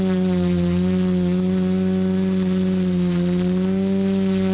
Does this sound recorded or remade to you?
recorded